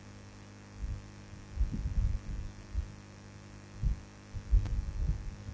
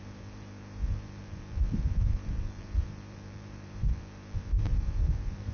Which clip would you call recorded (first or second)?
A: first